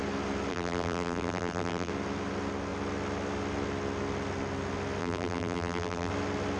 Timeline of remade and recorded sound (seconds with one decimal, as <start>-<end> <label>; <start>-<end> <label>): 0.0-0.5 recorded; 0.5-1.9 remade; 1.9-5.0 recorded; 5.0-6.1 remade; 6.1-6.6 recorded